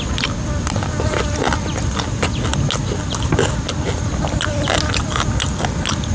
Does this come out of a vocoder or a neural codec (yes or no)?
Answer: no